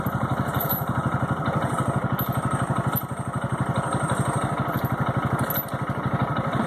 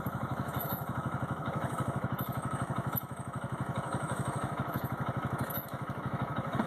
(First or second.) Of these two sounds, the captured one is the first